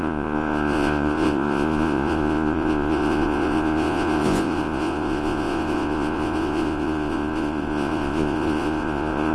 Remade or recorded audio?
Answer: remade